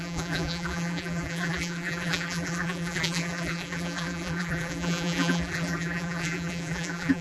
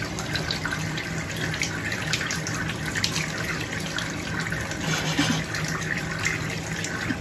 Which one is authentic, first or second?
second